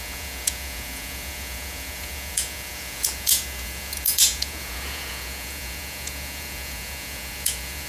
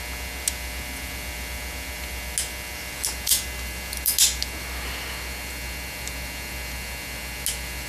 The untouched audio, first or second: second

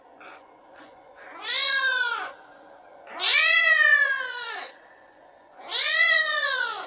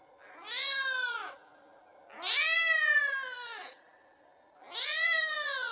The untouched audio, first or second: second